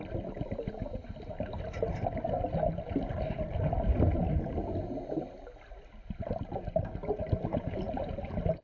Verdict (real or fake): real